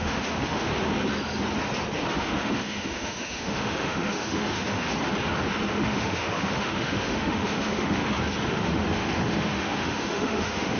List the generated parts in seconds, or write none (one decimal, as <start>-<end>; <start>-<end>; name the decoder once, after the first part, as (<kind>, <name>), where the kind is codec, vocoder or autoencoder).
0.0-0.7 (autoencoder, DAC-VAE); 2.1-4.9; 5.7-8.0; 8.5-10.8